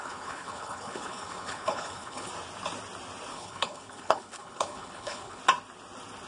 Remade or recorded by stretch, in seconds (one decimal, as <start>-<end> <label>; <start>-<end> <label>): 0.0-2.3 remade; 2.3-3.3 recorded; 3.3-5.4 remade; 5.4-6.3 recorded